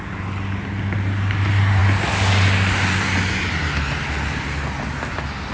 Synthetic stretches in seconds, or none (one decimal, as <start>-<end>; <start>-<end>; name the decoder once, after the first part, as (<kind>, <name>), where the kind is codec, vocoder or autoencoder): none